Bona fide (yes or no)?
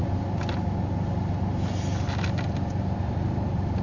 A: yes